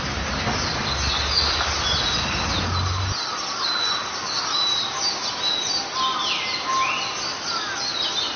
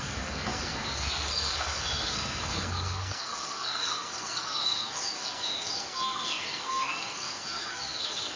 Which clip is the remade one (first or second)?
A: second